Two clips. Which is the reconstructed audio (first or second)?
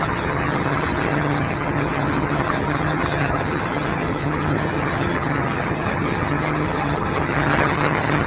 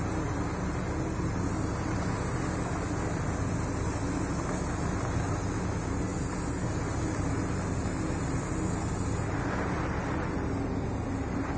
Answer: first